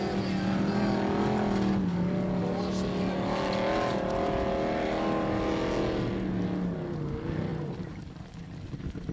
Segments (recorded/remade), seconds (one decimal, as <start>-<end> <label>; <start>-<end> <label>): 0.0-9.1 recorded